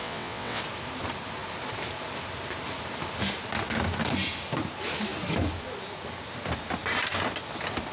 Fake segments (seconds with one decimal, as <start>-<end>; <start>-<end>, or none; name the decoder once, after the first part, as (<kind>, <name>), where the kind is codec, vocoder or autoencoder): 0.0-0.6 (vocoder, WaveNeXt)